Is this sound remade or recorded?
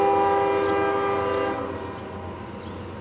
recorded